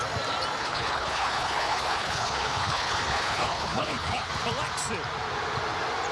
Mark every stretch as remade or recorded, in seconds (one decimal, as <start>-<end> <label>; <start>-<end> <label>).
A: 0.0-0.6 recorded; 0.6-4.3 remade; 4.3-6.1 recorded